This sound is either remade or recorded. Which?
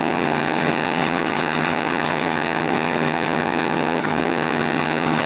remade